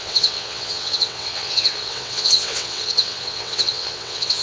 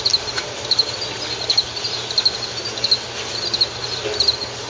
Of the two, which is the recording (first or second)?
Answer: second